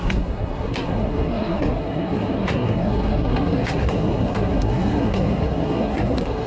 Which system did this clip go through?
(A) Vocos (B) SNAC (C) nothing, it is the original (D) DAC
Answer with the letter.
B